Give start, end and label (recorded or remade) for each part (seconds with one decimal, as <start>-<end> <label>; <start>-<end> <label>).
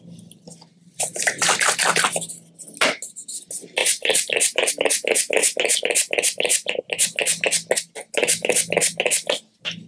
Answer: 0.0-0.7 recorded; 0.7-1.4 remade; 1.4-3.8 recorded; 3.8-4.7 remade; 4.7-9.9 recorded